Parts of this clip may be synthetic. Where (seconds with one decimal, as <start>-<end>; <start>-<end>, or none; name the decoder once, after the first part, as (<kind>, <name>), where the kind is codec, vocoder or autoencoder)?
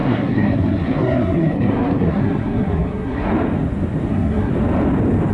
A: 0.0-3.3 (codec, SNAC); 4.1-4.5